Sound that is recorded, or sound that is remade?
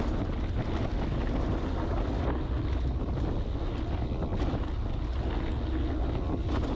recorded